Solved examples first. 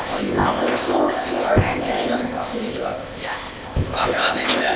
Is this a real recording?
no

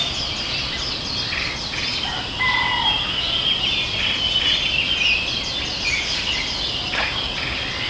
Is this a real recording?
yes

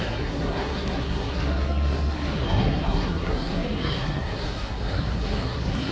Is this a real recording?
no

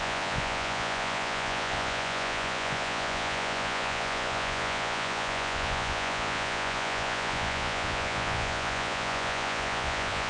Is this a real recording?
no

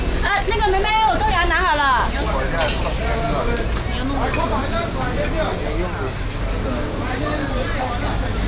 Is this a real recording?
yes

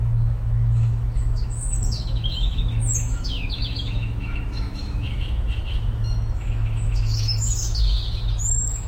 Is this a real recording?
no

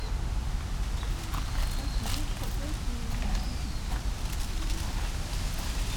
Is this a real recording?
yes